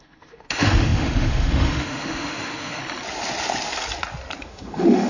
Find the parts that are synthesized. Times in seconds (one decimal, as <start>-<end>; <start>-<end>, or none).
0.0-2.8; 4.4-5.1